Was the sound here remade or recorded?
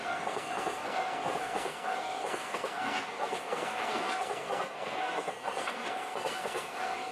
remade